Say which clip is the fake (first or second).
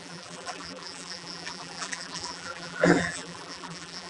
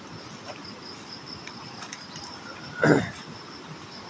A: first